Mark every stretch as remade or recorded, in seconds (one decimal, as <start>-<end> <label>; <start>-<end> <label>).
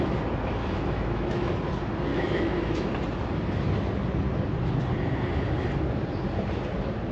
0.0-0.6 recorded; 0.6-1.5 remade; 1.5-2.1 recorded; 2.1-2.9 remade; 2.9-7.1 recorded